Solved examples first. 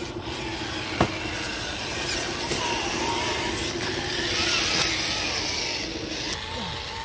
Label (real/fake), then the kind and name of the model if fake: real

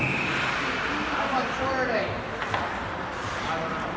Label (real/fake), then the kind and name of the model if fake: real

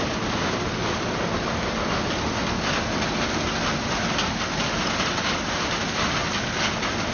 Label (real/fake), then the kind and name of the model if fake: real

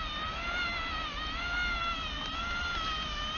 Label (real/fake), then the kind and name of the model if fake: real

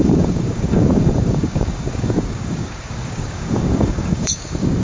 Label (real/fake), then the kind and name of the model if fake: fake, codec, DAC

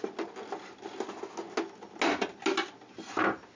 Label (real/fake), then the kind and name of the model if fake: real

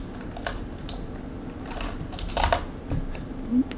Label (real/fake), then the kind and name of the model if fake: real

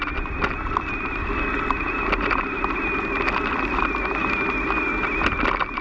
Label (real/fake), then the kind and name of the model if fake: real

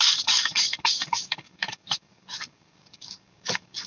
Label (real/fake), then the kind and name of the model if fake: fake, codec, DAC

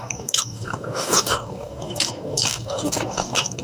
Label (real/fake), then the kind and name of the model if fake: fake, codec, DAC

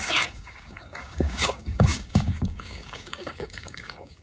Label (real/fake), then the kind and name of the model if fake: fake, codec, DAC